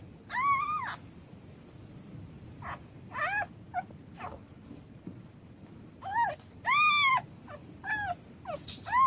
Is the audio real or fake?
real